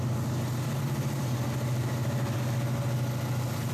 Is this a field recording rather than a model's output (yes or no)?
yes